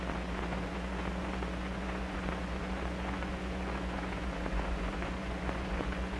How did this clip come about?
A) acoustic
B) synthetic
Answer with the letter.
B